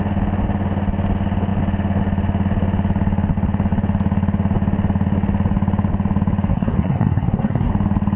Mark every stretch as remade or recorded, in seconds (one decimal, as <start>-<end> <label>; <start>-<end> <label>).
0.0-6.5 recorded; 6.5-7.7 remade; 7.7-8.2 recorded